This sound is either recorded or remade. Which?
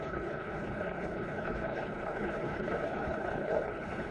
remade